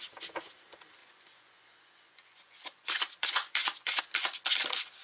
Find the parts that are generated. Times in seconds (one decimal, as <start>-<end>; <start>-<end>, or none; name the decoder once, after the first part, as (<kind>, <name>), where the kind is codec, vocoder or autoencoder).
1.0-4.0 (vocoder, Vocos)